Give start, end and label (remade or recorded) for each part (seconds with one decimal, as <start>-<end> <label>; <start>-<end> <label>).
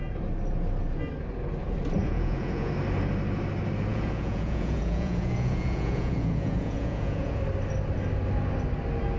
0.0-2.0 recorded; 2.0-2.7 remade; 2.7-3.9 recorded; 3.9-7.4 remade; 7.4-9.2 recorded